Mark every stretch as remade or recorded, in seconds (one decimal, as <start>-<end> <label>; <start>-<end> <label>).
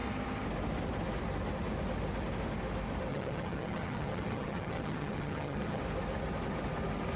0.0-3.1 recorded; 3.1-5.8 remade; 5.8-7.2 recorded